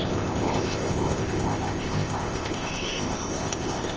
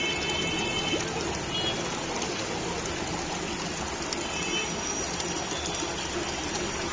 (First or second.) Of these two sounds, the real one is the second